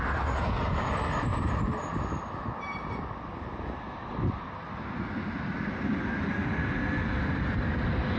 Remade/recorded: recorded